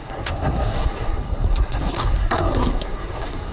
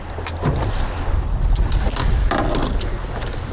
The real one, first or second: second